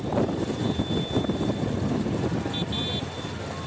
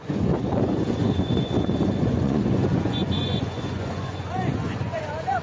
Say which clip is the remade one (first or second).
second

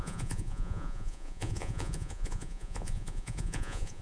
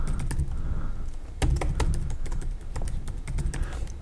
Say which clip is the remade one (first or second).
first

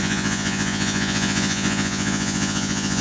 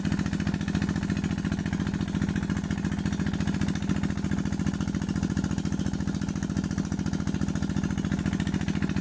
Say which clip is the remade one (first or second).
first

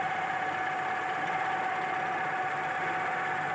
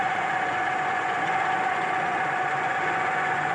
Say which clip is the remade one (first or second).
second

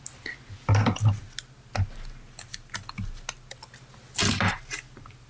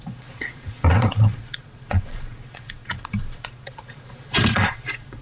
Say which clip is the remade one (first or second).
second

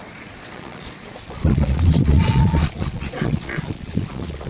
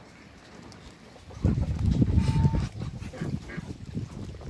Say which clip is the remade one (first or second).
first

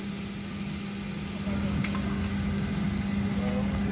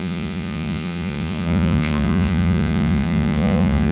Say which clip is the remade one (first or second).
second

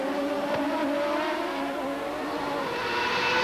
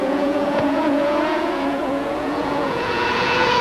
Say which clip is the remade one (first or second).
second